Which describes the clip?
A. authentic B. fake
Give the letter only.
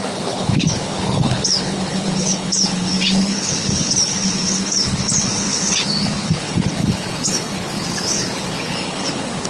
B